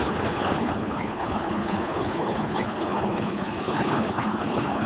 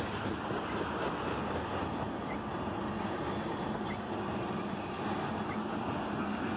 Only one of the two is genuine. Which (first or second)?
second